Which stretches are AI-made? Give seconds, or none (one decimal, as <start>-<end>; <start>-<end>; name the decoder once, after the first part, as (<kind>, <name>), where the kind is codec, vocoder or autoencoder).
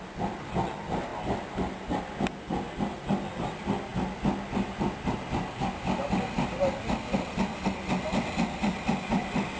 none